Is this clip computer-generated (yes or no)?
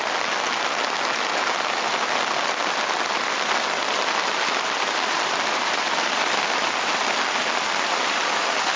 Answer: no